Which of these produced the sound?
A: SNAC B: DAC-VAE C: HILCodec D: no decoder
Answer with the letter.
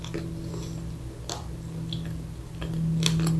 D